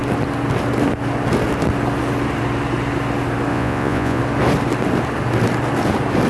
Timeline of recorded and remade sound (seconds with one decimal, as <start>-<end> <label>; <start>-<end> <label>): 0.0-3.5 recorded; 3.5-4.2 remade; 4.2-6.3 recorded